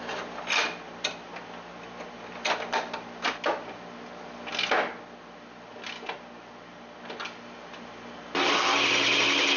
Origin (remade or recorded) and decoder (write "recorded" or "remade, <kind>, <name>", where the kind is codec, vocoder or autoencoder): recorded